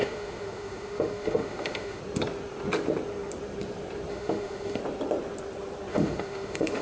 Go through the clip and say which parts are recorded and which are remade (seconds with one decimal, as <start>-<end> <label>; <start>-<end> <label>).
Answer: 0.0-2.0 remade; 2.0-4.1 recorded; 4.1-4.8 remade; 4.8-5.9 recorded; 5.9-6.8 remade